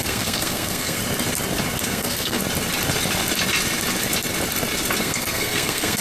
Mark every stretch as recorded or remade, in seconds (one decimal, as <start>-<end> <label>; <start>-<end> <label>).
0.0-1.0 remade; 1.0-1.8 recorded; 1.8-2.4 remade; 2.4-5.0 recorded; 5.0-6.0 remade